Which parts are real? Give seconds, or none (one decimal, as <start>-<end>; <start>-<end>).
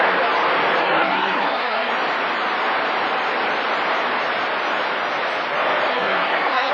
0.0-0.8; 1.9-5.9